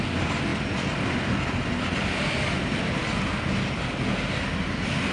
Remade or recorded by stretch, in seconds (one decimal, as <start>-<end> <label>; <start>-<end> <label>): 0.0-5.1 recorded